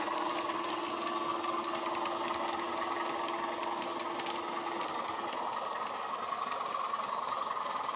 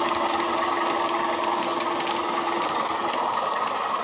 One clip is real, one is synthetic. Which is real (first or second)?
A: first